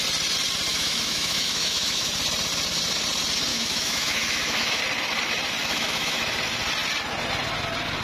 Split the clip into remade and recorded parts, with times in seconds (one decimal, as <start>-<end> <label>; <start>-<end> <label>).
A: 0.0-0.7 recorded; 0.7-2.1 remade; 2.1-3.5 recorded; 3.5-4.8 remade; 4.8-5.6 recorded; 5.6-6.2 remade; 6.2-8.0 recorded